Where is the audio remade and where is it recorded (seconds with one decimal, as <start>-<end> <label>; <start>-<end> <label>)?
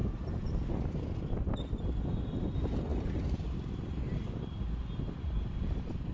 0.0-2.9 recorded; 2.9-4.8 remade; 4.8-6.1 recorded